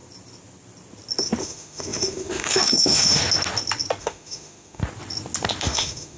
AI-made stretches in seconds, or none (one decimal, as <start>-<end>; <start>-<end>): 1.4-3.2; 4.0-4.8; 5.6-6.2